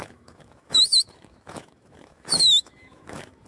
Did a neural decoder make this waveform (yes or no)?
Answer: yes